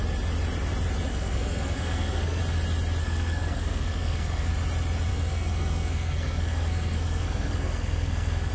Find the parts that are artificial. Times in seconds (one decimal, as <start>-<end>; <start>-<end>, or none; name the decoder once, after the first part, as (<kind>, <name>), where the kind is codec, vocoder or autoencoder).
1.1-2.4 (codec, SNAC); 3.0-4.5; 5.1-8.5